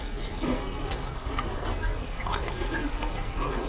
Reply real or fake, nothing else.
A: fake